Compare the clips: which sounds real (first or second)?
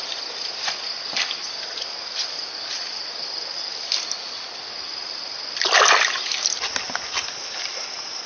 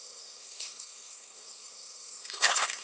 first